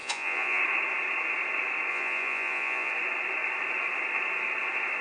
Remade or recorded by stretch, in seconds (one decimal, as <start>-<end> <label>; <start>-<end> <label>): 0.0-0.6 remade; 0.6-1.9 recorded; 1.9-2.9 remade; 2.9-5.0 recorded